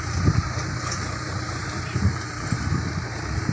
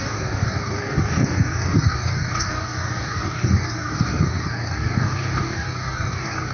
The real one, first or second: first